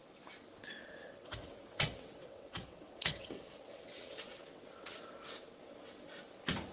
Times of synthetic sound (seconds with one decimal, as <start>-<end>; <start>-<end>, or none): 1.0-5.0